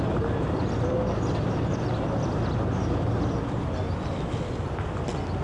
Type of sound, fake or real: real